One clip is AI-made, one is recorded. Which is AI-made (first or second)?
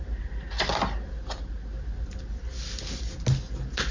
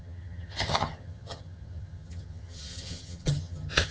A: second